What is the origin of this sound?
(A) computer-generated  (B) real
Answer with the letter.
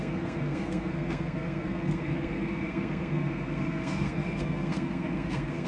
A